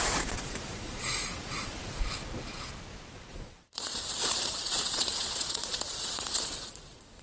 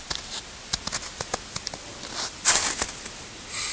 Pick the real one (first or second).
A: second